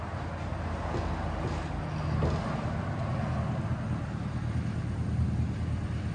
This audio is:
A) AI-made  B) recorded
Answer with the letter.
B